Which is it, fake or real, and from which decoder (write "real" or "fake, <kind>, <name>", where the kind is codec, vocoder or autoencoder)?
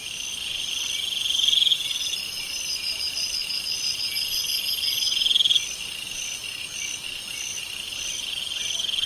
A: real